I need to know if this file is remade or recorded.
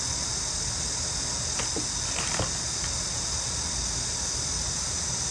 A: recorded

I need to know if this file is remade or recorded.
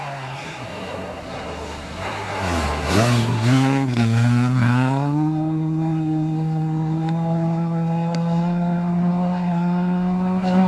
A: remade